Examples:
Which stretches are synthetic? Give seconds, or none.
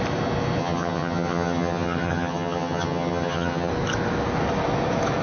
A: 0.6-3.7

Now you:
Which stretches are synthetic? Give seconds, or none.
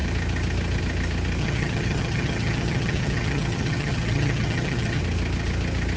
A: 1.4-5.0